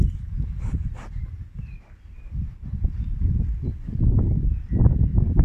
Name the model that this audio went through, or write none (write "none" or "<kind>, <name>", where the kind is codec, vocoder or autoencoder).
none